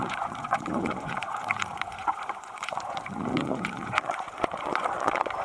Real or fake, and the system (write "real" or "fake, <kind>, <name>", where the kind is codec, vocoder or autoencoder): fake, vocoder, Vocos